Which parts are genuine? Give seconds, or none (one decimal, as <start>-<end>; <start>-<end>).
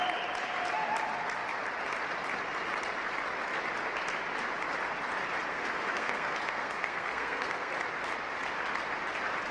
0.0-5.5; 7.7-9.5